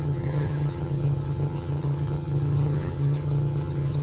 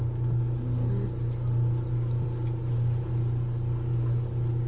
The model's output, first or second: first